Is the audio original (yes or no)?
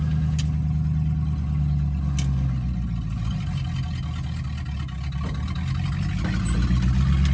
yes